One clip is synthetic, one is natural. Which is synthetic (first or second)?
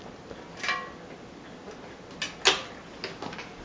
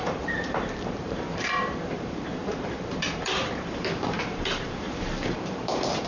second